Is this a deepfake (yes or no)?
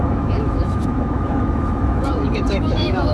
yes